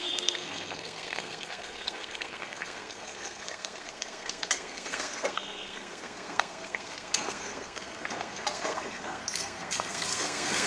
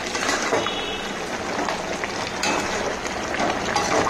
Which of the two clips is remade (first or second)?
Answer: first